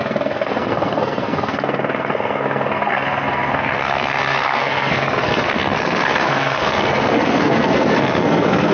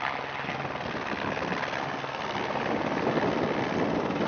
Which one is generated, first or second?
first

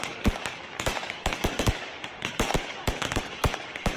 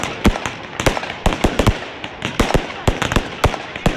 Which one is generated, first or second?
first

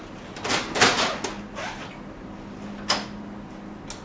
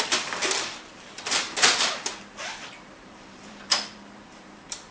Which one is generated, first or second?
second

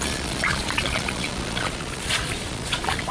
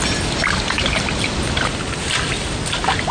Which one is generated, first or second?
first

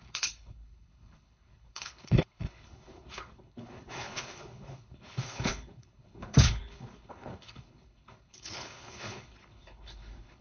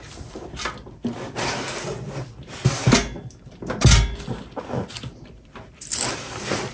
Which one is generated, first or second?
first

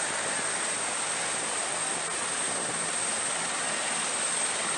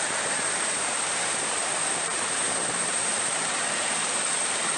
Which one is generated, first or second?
second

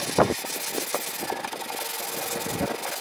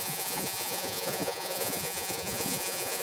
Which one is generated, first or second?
second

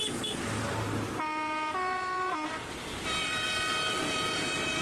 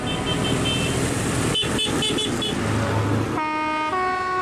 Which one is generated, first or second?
first